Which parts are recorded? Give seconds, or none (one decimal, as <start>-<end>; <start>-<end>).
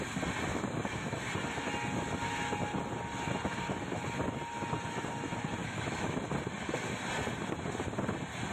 0.0-0.5; 1.3-5.6; 6.2-8.5